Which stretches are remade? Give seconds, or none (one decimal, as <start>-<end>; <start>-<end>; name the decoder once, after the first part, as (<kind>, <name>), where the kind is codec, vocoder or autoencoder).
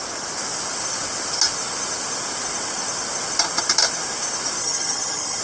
4.6-5.4 (vocoder, HiFi-GAN)